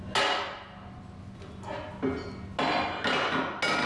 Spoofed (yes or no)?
no